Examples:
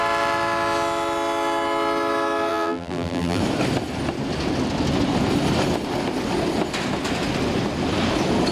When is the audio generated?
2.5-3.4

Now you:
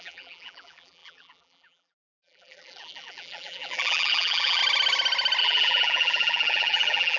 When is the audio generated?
0.0-4.6; 5.4-7.2

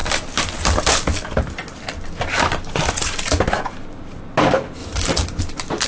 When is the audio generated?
4.8-5.4

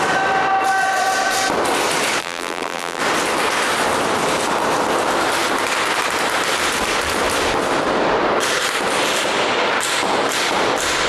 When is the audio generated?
2.2-3.0

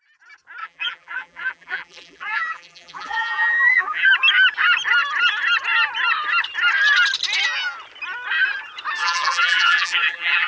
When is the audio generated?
0.6-4.1; 9.0-10.5

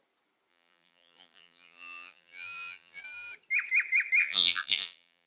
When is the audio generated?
0.5-3.0; 4.2-5.3

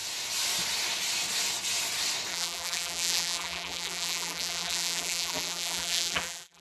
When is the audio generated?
2.3-6.6

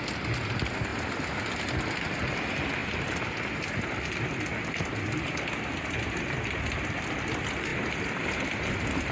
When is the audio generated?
none